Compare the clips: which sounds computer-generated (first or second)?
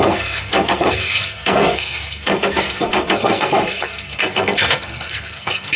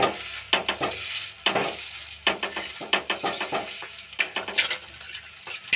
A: first